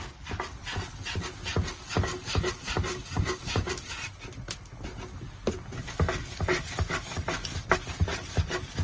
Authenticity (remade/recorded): recorded